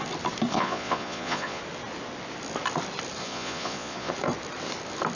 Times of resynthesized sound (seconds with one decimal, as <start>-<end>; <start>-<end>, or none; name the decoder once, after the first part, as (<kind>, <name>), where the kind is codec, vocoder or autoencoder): 0.5-1.6 (vocoder, Vocos); 3.2-4.1